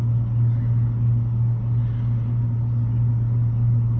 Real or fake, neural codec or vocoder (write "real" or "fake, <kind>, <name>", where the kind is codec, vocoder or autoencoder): real